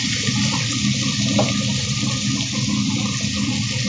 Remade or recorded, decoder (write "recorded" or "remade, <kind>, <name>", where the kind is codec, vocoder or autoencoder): recorded